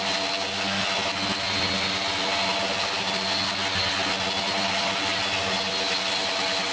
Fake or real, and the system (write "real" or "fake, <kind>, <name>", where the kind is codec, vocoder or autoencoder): real